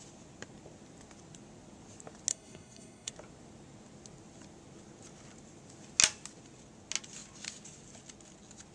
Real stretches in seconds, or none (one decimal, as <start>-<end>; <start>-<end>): 0.0-2.3; 3.1-8.7